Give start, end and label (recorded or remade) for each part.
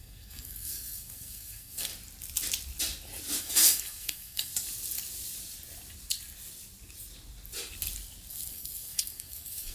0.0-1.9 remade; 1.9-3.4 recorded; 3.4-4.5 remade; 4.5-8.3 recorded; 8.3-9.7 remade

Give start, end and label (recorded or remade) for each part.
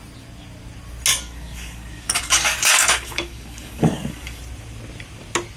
0.0-1.1 recorded; 1.1-4.4 remade; 4.4-5.6 recorded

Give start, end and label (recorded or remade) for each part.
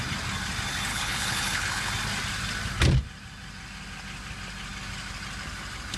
0.0-0.9 recorded; 0.9-1.9 remade; 1.9-6.0 recorded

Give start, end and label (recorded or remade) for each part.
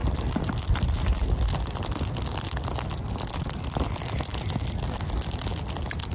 0.0-6.1 recorded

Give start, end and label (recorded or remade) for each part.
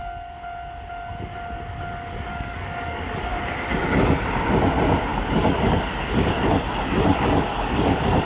0.0-2.3 recorded; 2.3-3.9 remade; 3.9-5.1 recorded; 5.1-6.5 remade; 6.5-7.1 recorded; 7.1-8.3 remade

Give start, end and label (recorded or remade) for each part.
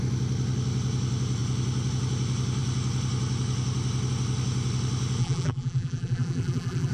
0.0-5.2 recorded; 5.2-6.9 remade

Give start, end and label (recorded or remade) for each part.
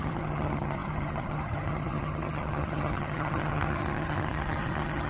0.0-5.1 remade